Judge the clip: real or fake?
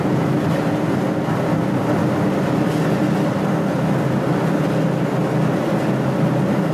real